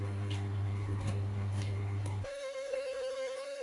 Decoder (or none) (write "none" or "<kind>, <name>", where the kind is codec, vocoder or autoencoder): codec, SNAC